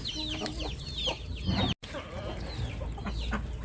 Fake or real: real